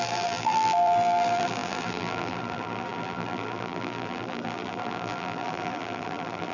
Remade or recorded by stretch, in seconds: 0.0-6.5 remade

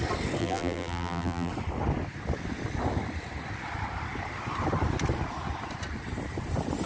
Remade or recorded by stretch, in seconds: 0.0-0.4 recorded; 0.4-1.5 remade; 1.5-6.9 recorded

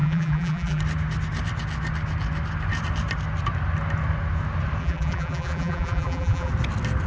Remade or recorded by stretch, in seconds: 0.0-0.8 remade; 0.8-4.8 recorded; 4.8-6.5 remade; 6.5-7.1 recorded

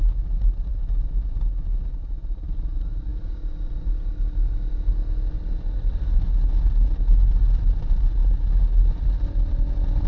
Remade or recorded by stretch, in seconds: 0.0-1.9 recorded; 1.9-2.6 remade; 2.6-10.1 recorded

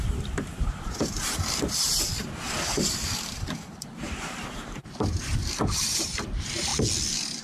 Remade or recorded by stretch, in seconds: 0.0-6.7 remade; 6.7-7.4 recorded

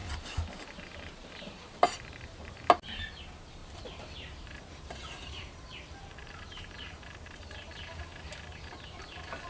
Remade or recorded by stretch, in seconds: 0.0-1.6 recorded; 1.6-2.6 remade; 2.6-3.6 recorded; 3.6-7.7 remade; 7.7-9.5 recorded